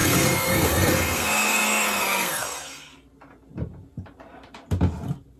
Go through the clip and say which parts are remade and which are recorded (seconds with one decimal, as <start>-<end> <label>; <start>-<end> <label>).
0.0-2.9 remade; 2.9-5.4 recorded